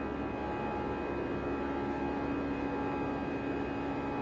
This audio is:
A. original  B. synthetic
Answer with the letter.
A